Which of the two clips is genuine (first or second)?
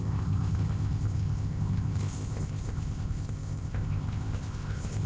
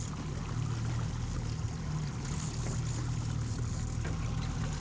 second